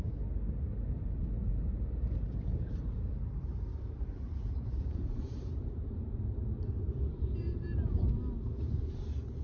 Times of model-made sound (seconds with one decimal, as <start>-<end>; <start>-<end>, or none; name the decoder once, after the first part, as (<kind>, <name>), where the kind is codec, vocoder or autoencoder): 1.4-6.0 (vocoder, BigVGAN v2); 7.1-8.0